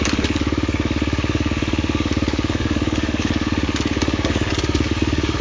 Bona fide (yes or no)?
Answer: no